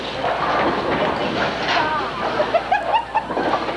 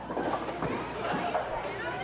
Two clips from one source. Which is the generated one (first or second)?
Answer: second